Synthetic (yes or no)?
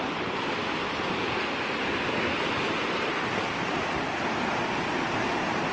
no